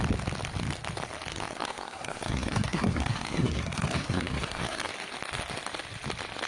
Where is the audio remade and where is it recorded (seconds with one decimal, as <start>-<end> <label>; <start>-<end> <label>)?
0.0-1.3 recorded; 1.3-4.9 remade; 4.9-6.5 recorded